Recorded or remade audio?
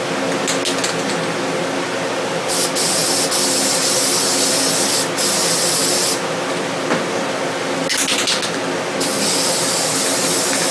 recorded